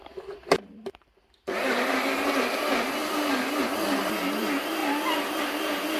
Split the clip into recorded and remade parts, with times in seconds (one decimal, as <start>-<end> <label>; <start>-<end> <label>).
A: 0.0-6.0 recorded